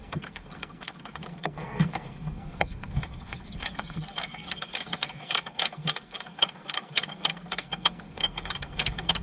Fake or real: fake